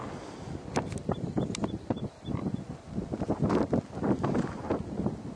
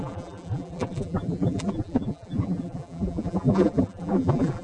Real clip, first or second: first